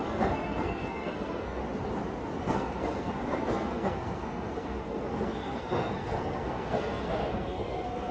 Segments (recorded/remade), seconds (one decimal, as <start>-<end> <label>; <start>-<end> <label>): 0.0-1.6 remade; 1.6-2.4 recorded; 2.4-8.1 remade